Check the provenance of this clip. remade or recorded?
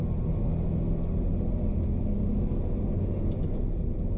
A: recorded